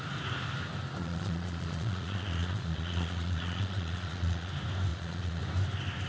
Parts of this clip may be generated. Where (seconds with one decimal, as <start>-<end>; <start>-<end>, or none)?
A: 1.0-4.5; 4.9-5.4